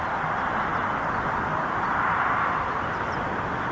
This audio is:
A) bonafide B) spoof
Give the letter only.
A